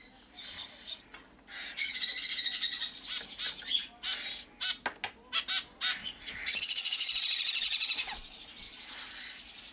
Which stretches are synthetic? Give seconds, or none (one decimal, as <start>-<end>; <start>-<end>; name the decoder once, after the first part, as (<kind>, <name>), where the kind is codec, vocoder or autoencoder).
6.0-8.6 (vocoder, Vocos)